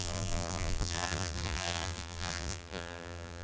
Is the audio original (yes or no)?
no